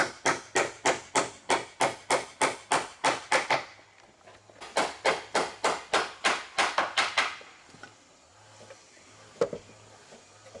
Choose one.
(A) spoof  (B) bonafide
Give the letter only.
B